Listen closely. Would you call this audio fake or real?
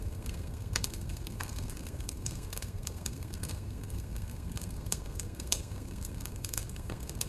fake